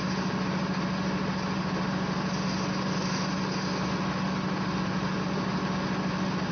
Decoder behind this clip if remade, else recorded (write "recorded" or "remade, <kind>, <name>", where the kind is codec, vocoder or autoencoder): recorded